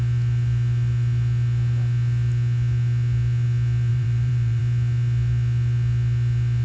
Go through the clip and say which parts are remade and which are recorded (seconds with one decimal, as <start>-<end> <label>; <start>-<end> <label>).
0.0-3.9 recorded; 3.9-4.6 remade; 4.6-6.6 recorded